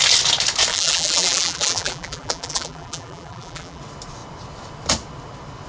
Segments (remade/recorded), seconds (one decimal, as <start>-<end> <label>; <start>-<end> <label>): 0.0-0.7 recorded; 0.7-3.8 remade; 3.8-5.7 recorded